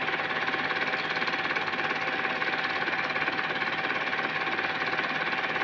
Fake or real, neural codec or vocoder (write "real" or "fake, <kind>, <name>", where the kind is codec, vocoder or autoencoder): real